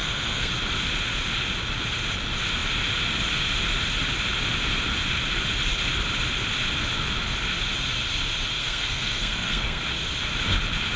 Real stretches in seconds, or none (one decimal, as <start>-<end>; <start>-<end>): 0.5-8.6; 9.8-11.0